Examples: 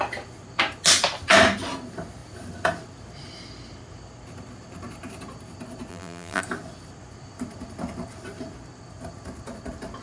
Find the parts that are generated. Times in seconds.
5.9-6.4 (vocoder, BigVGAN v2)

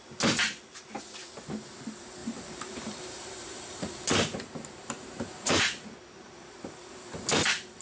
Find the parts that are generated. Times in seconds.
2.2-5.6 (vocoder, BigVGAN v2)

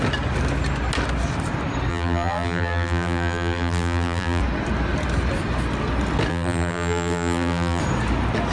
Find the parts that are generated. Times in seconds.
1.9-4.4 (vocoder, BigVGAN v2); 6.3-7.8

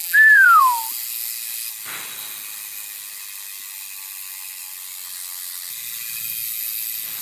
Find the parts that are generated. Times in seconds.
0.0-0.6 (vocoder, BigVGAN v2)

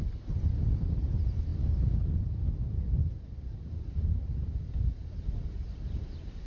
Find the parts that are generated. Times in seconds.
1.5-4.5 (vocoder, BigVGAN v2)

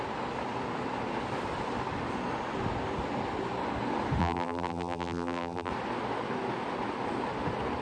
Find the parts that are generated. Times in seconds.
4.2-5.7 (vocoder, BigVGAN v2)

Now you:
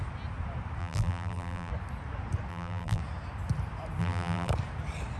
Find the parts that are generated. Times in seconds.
0.8-1.7 (vocoder, BigVGAN v2); 2.5-3.0; 4.0-4.5

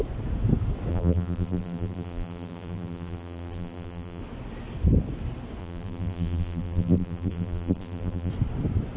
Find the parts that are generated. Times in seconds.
0.9-4.2 (vocoder, BigVGAN v2); 5.6-8.3